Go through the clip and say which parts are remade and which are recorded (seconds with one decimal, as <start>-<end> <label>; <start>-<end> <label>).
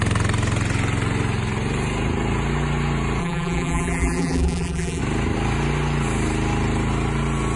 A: 0.0-3.2 recorded; 3.2-5.0 remade; 5.0-7.6 recorded